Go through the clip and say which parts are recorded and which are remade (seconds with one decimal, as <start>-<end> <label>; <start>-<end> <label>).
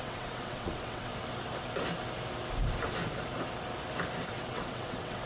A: 0.0-1.1 remade; 1.1-4.3 recorded; 4.3-5.3 remade